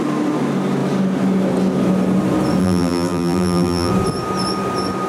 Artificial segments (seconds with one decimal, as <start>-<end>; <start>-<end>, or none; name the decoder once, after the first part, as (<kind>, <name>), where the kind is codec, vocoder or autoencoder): 2.6-3.9 (vocoder, BigVGAN v2)